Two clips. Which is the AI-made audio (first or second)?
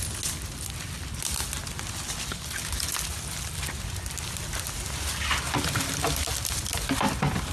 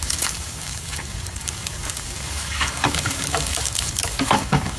second